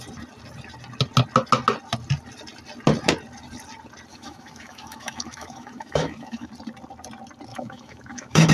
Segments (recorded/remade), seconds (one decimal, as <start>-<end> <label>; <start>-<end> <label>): 0.0-4.1 recorded; 4.1-6.5 remade; 6.5-7.5 recorded; 7.5-8.5 remade